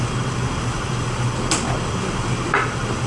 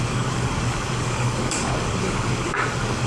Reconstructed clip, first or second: second